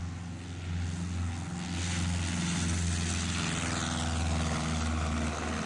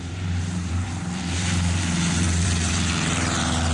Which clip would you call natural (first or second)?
first